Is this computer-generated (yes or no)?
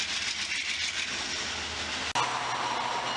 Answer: no